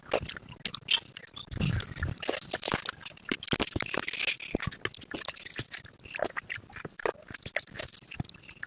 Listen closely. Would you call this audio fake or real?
real